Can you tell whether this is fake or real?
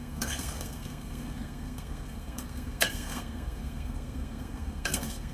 fake